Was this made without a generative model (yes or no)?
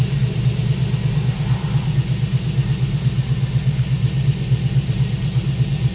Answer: yes